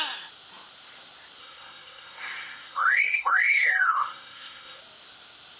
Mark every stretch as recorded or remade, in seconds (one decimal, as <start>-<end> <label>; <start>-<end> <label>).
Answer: 0.0-1.4 recorded; 1.4-4.8 remade; 4.8-5.6 recorded